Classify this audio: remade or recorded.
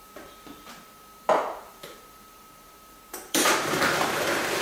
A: remade